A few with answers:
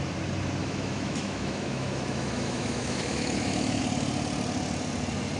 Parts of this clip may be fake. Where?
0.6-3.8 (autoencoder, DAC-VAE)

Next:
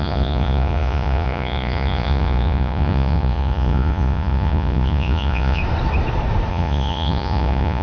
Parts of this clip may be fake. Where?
0.0-5.6 (vocoder, Vocos); 6.5-7.8

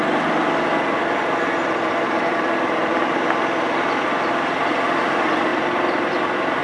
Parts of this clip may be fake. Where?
none